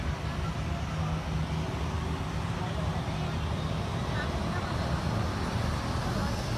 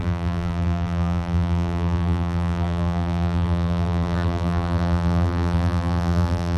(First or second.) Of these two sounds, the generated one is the second